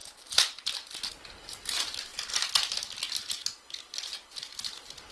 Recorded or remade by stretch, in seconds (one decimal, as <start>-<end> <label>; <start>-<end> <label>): 0.0-5.1 recorded